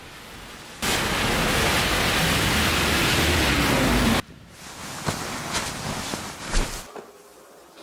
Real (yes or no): yes